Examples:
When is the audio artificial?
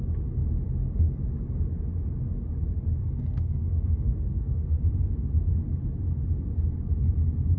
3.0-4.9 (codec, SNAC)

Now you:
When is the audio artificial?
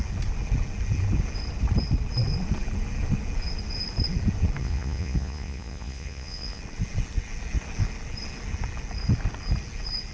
4.6-6.6 (vocoder, Vocos)